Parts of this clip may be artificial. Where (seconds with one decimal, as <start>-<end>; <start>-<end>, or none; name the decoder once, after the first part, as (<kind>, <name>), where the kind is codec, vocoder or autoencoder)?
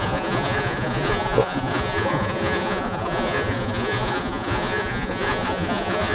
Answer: 0.0-6.1 (vocoder, Vocos)